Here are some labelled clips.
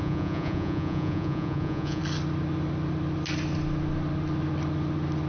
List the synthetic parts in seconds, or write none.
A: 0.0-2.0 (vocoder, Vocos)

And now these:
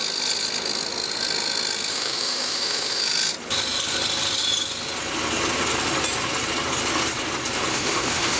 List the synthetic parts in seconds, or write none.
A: 1.9-3.0 (autoencoder, DAC-VAE); 7.7-8.4